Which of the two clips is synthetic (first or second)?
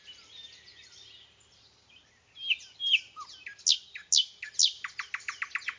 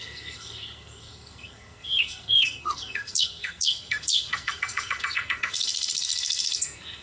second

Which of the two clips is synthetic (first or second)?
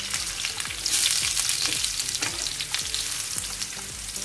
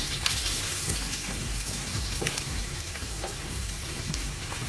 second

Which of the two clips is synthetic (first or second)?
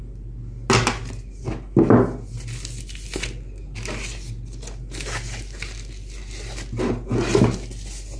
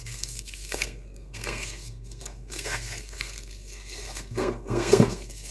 second